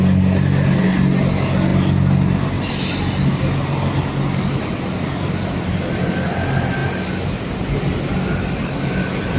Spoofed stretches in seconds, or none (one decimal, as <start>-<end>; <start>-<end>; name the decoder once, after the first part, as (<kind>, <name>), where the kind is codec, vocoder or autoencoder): none